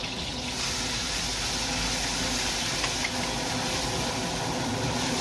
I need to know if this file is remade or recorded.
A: recorded